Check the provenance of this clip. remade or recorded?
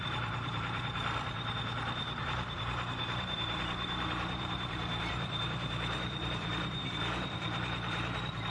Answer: remade